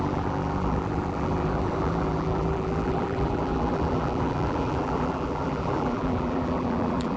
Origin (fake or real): fake